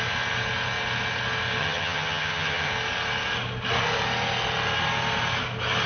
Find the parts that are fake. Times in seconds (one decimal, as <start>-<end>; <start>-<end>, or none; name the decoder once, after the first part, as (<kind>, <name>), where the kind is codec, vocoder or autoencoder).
1.6-2.7 (vocoder, HiFi-GAN)